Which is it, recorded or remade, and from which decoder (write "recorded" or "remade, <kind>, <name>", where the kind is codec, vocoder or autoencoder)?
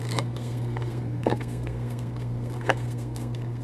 remade, codec, SNAC